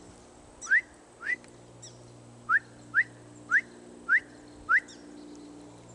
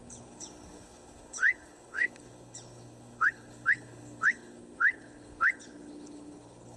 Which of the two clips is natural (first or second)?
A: first